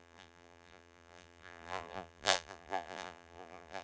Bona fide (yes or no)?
no